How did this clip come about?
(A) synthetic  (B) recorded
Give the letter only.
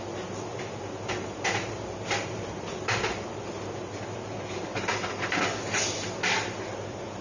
B